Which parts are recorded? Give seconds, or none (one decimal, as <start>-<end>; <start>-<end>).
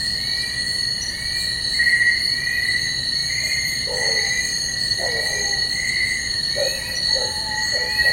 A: 0.0-3.2; 5.9-8.1